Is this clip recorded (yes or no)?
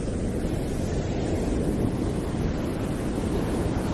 yes